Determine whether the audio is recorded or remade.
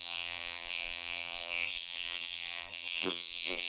remade